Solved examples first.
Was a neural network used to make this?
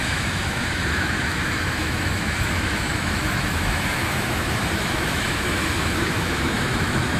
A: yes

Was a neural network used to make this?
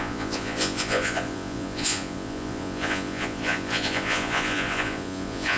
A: yes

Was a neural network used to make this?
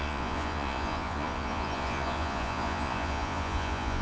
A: yes